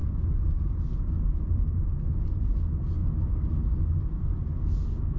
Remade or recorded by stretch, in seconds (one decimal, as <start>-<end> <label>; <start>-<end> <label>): 0.0-2.6 remade; 2.6-3.0 recorded; 3.0-3.5 remade; 3.5-5.2 recorded

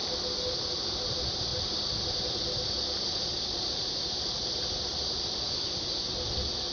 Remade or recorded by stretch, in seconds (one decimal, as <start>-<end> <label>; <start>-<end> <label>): 0.0-1.5 recorded; 1.5-5.5 remade; 5.5-6.7 recorded